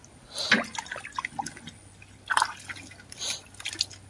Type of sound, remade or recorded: recorded